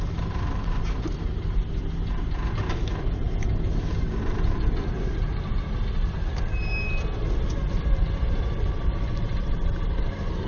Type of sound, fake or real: real